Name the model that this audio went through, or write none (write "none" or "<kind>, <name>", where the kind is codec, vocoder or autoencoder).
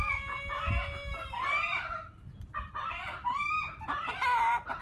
vocoder, BigVGAN v2